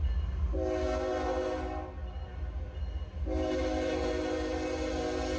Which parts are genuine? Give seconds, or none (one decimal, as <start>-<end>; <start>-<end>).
0.0-5.4

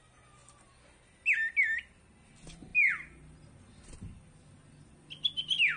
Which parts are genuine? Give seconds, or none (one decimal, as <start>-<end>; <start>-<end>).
0.0-5.8

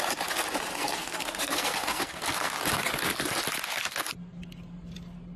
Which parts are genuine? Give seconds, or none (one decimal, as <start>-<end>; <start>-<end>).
0.0-0.7; 2.6-5.4

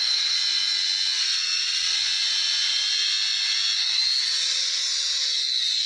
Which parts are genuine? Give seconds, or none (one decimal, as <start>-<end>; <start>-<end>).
0.4-1.2; 2.0-4.2; 4.8-5.9

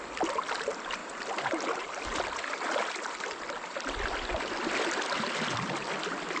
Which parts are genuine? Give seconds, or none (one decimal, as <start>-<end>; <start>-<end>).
0.0-6.4

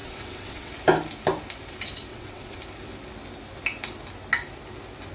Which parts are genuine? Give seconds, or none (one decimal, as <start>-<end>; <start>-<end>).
0.7-2.1; 2.6-5.1

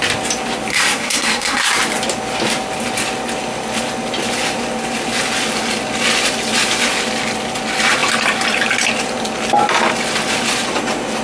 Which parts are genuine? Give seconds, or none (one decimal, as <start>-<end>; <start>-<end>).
0.0-0.7; 1.7-11.2